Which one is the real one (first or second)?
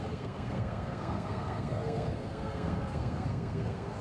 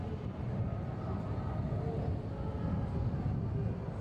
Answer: second